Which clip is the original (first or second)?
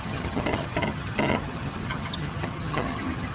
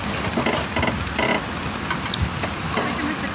second